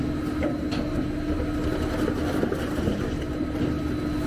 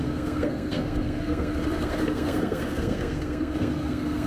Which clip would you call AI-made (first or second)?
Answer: second